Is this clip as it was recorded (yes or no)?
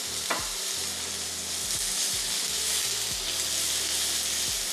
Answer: yes